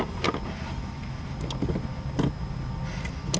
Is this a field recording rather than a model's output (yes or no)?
yes